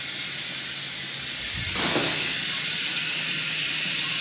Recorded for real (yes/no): yes